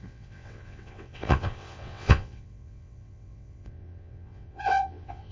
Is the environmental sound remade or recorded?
remade